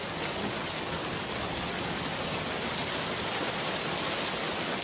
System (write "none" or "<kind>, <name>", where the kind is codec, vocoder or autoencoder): none